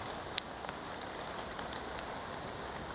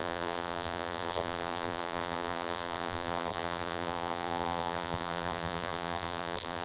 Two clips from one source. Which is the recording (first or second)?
first